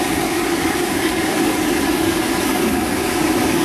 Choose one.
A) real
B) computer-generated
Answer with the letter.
B